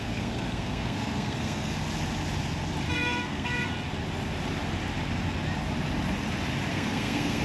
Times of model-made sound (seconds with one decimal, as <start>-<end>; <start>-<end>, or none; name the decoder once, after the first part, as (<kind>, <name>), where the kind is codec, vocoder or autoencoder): 0.0-1.7 (codec, SNAC); 2.9-3.7; 6.7-7.4